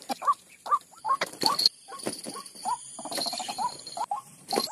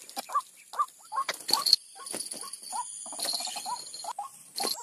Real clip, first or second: second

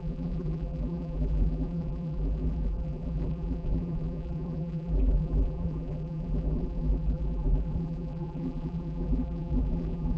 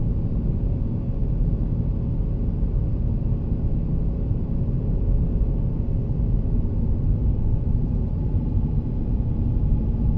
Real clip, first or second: second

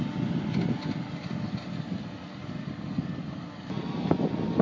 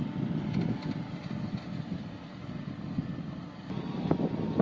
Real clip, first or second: first